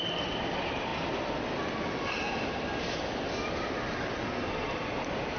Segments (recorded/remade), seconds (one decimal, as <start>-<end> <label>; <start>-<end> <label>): 0.0-5.4 recorded